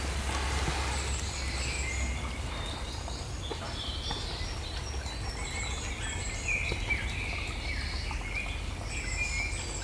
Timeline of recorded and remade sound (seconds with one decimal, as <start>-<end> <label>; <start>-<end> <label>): 0.0-9.8 recorded